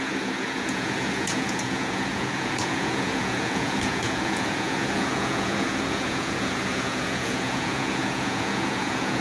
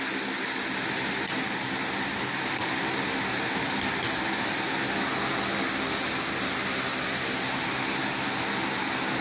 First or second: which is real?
second